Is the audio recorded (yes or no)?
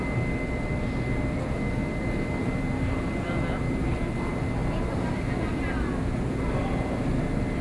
yes